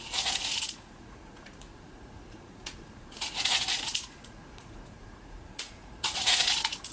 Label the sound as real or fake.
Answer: fake